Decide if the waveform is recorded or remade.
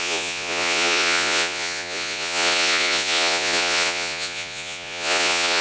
remade